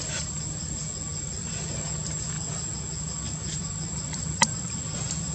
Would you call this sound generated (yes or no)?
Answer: no